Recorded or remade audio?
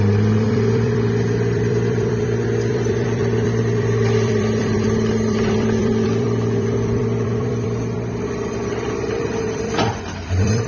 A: remade